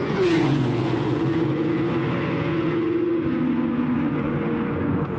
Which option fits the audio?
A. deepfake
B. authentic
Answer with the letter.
A